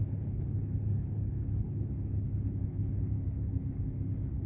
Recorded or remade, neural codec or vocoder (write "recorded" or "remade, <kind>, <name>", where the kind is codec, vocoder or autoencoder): remade, codec, HILCodec